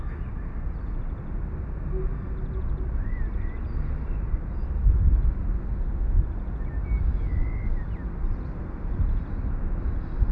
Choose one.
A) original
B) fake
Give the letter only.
A